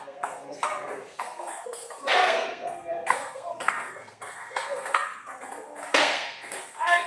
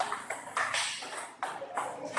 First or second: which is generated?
first